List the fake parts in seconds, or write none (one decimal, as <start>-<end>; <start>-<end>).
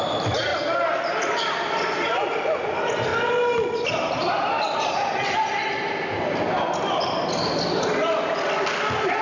0.0-0.5; 1.2-3.1; 3.9-9.2